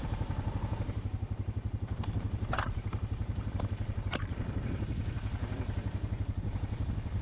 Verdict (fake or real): fake